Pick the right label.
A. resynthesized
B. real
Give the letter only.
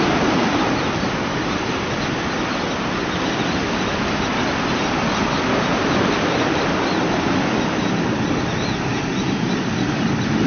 B